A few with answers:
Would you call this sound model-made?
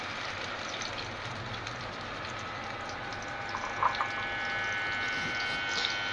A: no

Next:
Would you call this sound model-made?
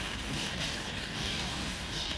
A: yes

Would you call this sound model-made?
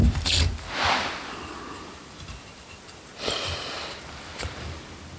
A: no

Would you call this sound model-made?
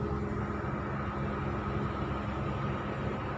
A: no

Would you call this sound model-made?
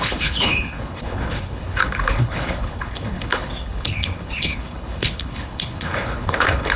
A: yes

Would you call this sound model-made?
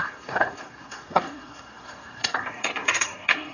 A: yes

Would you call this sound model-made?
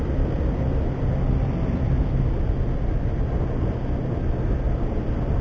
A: no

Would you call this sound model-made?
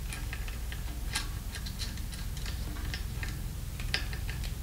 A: no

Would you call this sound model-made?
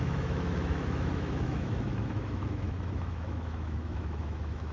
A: yes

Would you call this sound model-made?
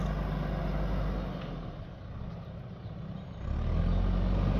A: no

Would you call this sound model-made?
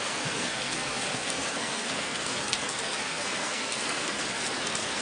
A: yes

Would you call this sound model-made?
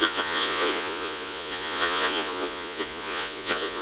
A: yes